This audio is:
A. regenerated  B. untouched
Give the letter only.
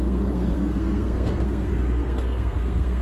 A